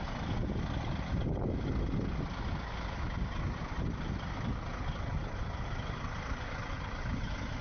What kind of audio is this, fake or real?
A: real